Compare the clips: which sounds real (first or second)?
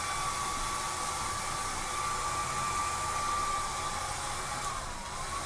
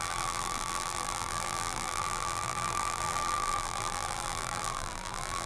first